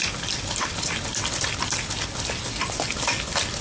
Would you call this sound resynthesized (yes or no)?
no